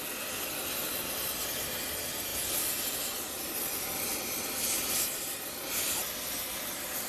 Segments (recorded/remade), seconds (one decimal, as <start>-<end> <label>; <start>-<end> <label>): 0.0-7.1 recorded